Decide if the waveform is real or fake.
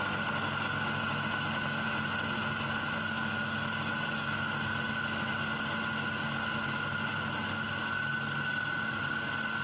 real